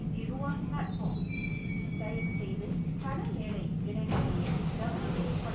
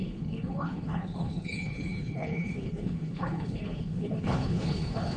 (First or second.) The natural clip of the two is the first